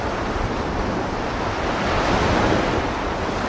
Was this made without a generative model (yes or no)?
yes